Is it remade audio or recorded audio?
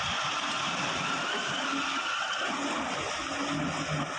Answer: recorded